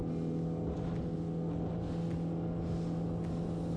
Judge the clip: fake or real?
real